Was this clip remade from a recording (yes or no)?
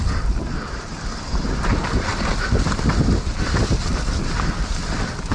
yes